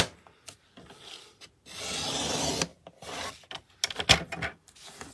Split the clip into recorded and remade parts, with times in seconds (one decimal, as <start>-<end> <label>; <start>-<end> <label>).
0.0-5.1 recorded